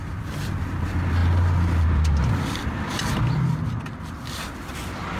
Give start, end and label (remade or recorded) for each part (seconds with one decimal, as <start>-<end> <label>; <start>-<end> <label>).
0.0-5.2 recorded